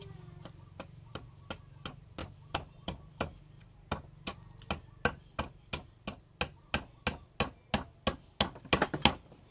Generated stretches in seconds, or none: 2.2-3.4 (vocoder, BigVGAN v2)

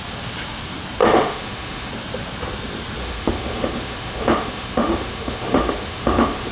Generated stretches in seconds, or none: 1.0-1.9 (autoencoder, DAC-VAE); 3.0-6.5

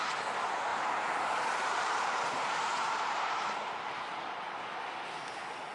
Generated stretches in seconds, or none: 0.7-3.7 (vocoder, BigVGAN v2)

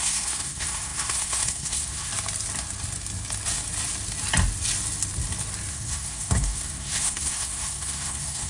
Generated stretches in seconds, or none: 0.0-2.1 (codec, SNAC); 5.7-8.5

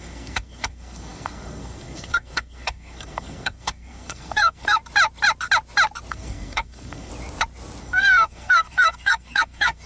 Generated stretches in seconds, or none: 0.0-4.8 (codec, SNAC); 6.1-7.1; 7.8-9.9